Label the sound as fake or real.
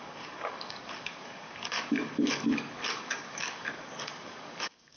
fake